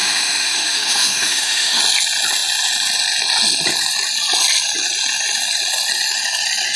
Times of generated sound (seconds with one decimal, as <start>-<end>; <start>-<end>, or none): 0.0-1.8

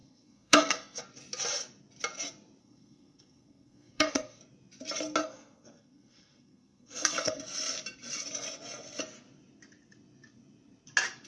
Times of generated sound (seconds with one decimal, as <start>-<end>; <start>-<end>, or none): 0.0-1.0; 2.6-4.4; 5.2-7.4